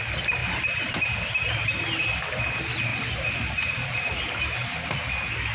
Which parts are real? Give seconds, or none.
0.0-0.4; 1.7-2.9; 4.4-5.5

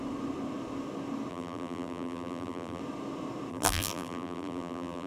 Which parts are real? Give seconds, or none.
0.0-1.3; 2.8-3.5

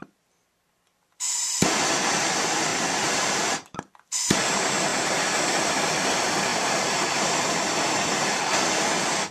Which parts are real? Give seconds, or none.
0.0-2.7; 3.9-4.9; 5.6-6.5; 8.4-9.3

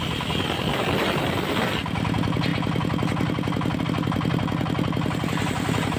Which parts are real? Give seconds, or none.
0.0-6.0

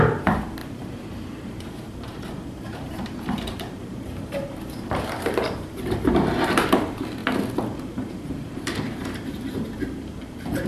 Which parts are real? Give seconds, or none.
7.2-7.8

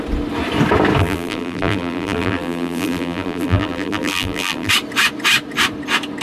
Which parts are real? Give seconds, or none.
0.0-1.0; 4.7-6.2

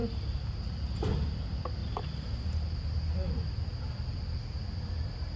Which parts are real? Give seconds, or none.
0.0-5.4

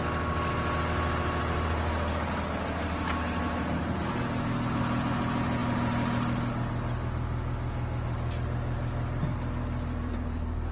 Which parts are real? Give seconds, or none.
0.0-10.7